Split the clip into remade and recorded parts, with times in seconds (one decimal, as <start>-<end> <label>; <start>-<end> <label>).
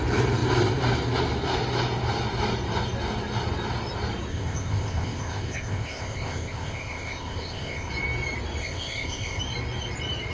0.0-4.3 recorded; 4.3-7.9 remade; 7.9-8.6 recorded; 8.6-9.4 remade; 9.4-10.3 recorded